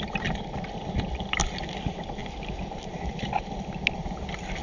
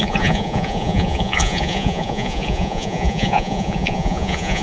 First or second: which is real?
first